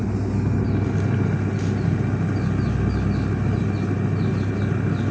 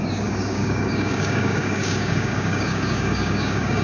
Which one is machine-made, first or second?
second